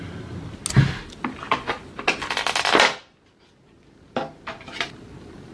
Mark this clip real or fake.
real